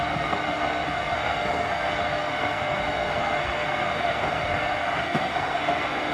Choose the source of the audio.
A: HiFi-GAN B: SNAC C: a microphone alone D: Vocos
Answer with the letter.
B